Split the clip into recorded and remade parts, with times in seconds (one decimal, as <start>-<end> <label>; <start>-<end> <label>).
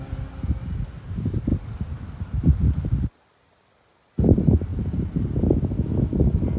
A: 0.0-4.7 recorded; 4.7-5.3 remade; 5.3-6.6 recorded